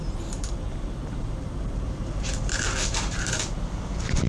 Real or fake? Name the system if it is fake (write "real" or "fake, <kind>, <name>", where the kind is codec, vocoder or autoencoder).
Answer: fake, vocoder, BigVGAN v2